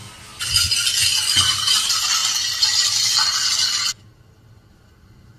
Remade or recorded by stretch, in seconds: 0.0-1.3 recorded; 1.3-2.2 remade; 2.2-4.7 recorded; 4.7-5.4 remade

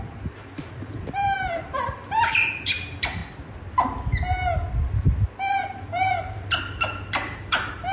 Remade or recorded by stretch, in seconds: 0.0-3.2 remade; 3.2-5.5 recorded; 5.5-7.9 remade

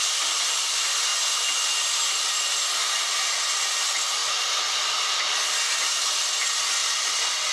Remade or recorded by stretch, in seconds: 0.0-6.8 recorded; 6.8-7.5 remade

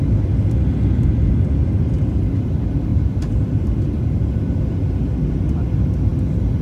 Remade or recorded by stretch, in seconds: 0.0-2.9 recorded; 2.9-4.4 remade; 4.4-6.6 recorded

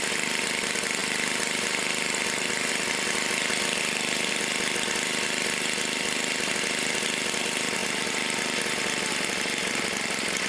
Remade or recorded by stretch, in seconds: 0.0-10.5 recorded

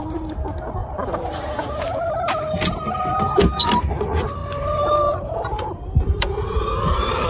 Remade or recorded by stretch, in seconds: 0.0-0.8 recorded; 0.8-3.3 remade; 3.3-4.4 recorded; 4.4-7.3 remade